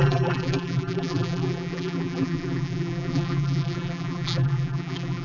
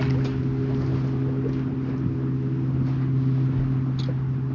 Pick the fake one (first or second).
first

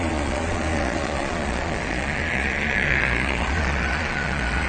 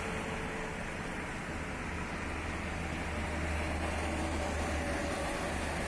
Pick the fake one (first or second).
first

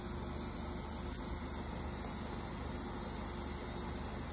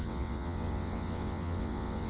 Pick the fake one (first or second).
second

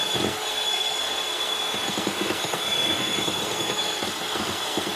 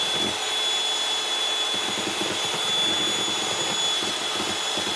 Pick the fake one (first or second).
first